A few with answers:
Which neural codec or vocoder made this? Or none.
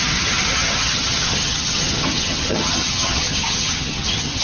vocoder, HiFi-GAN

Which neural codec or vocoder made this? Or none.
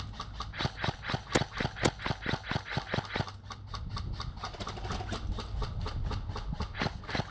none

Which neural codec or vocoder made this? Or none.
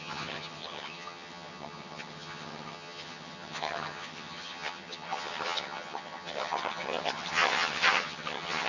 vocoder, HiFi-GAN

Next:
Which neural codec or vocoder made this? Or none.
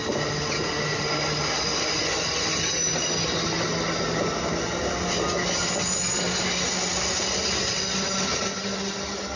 none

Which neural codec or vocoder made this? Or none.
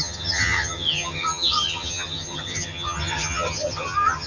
vocoder, HiFi-GAN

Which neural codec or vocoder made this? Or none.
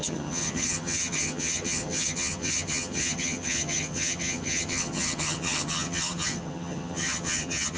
vocoder, HiFi-GAN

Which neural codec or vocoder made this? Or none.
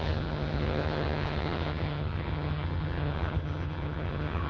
vocoder, HiFi-GAN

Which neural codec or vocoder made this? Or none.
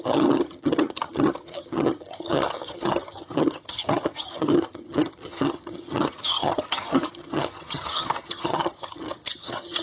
vocoder, HiFi-GAN